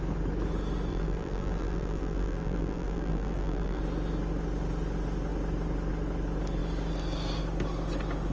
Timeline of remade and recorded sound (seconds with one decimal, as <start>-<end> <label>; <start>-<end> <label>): 0.0-0.9 recorded; 0.9-3.8 remade; 3.8-8.3 recorded